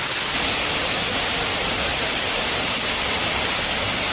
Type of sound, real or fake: real